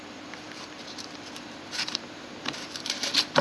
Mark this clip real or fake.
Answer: fake